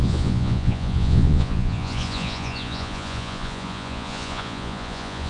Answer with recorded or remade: remade